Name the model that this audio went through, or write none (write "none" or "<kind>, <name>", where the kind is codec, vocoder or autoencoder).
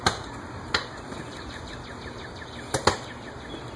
none